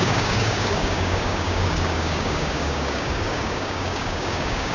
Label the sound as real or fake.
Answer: fake